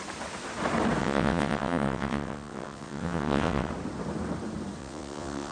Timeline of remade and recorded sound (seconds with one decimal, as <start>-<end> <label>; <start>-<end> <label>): 0.0-1.0 recorded; 1.0-3.7 remade; 3.7-4.8 recorded; 4.8-5.5 remade